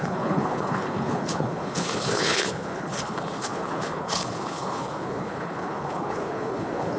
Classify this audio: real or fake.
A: fake